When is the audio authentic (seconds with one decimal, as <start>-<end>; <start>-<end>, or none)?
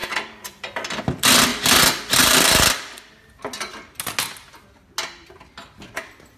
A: 0.0-6.4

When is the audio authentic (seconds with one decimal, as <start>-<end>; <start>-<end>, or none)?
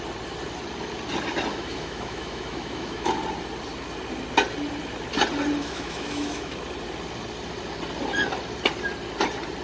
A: 0.0-1.5; 3.1-5.6; 6.5-9.6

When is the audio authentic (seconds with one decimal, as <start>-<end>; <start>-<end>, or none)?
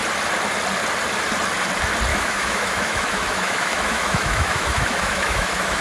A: 0.0-2.1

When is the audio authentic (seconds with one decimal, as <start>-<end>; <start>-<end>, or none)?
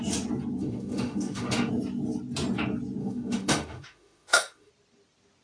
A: 0.0-0.6; 1.7-3.0; 4.7-5.4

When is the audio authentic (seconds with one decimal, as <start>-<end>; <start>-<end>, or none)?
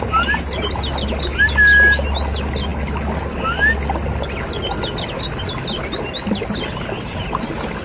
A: 0.0-7.8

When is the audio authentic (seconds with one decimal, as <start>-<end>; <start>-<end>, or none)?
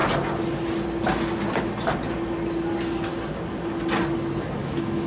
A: 0.0-4.6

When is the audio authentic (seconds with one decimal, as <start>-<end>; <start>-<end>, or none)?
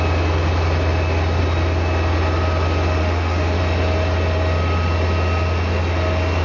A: 0.0-3.0; 3.6-6.4